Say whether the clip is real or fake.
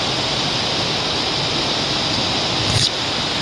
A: real